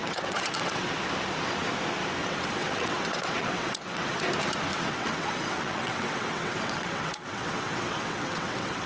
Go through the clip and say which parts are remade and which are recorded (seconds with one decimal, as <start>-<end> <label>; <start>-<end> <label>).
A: 0.0-0.9 remade; 0.9-2.2 recorded; 2.2-4.2 remade; 4.2-4.7 recorded; 4.7-8.9 remade